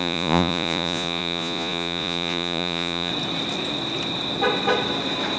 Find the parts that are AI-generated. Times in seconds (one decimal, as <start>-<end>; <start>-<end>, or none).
0.0-3.1

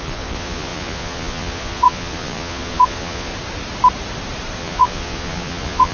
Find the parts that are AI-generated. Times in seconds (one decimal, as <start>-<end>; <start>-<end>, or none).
0.0-3.3; 4.6-5.9

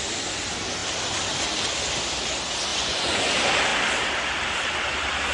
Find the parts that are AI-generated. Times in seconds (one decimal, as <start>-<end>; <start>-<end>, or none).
2.7-3.3

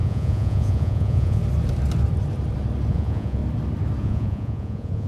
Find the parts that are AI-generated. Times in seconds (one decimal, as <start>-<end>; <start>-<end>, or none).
0.0-1.4; 2.9-3.4; 4.0-5.1

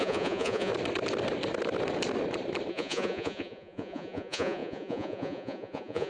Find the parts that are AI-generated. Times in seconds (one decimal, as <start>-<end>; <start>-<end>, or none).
0.0-0.7; 2.7-6.1

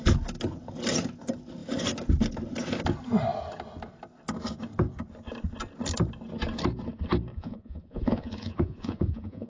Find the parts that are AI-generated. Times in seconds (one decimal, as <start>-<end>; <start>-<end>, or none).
7.3-9.5